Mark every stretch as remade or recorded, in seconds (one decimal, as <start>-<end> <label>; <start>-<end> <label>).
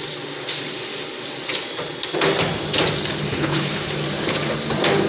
0.0-3.3 recorded; 3.3-3.8 remade; 3.8-5.1 recorded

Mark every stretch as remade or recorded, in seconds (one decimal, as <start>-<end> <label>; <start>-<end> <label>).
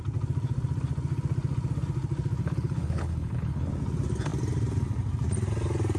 0.0-2.4 recorded; 2.4-3.7 remade; 3.7-6.0 recorded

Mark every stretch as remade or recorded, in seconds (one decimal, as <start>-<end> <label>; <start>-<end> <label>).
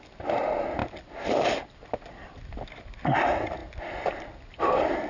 0.0-5.1 recorded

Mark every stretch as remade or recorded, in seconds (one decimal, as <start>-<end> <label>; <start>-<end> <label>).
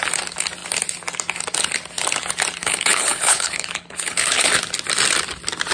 0.0-2.6 recorded; 2.6-4.5 remade; 4.5-5.7 recorded